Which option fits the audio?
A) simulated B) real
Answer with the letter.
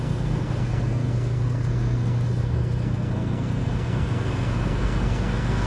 A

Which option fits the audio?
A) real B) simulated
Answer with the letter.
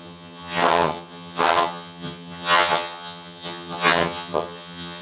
B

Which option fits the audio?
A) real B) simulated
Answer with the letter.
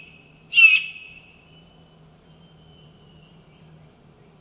B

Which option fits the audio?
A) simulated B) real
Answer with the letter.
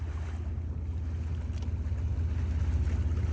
B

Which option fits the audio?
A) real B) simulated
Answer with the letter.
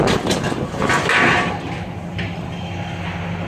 A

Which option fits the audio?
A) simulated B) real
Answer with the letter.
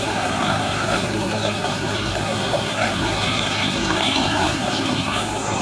A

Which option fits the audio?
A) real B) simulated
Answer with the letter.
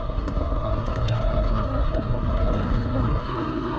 B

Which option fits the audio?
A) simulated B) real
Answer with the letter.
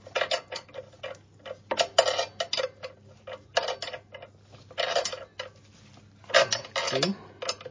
B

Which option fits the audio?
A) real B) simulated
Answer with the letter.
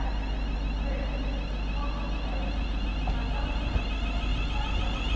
A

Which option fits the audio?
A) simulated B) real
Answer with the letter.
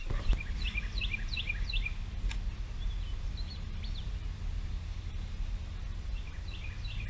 B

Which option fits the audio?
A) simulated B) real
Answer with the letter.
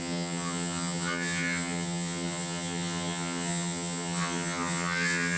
A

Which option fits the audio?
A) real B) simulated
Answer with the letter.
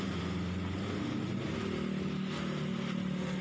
A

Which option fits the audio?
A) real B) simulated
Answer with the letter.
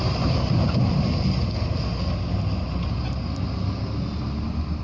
A